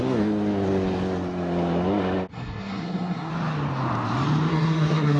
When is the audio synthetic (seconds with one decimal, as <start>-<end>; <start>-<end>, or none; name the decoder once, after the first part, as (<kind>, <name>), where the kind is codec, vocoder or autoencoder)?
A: 2.3-3.3 (codec, SNAC); 4.5-5.2